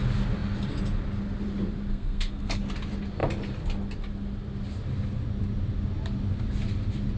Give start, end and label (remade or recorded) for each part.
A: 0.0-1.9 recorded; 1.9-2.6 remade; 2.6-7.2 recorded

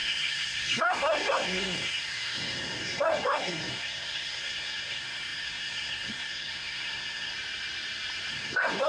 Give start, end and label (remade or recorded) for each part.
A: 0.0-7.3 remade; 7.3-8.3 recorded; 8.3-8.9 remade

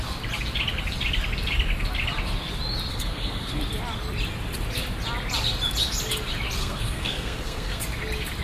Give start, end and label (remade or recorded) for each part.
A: 0.0-2.9 recorded; 2.9-3.6 remade; 3.6-6.6 recorded; 6.6-7.8 remade; 7.8-8.4 recorded